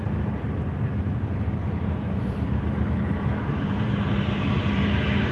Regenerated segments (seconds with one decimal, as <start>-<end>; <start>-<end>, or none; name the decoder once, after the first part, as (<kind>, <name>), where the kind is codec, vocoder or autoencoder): 1.6-4.8 (vocoder, BigVGAN v2)